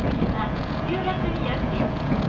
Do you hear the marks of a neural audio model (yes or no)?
yes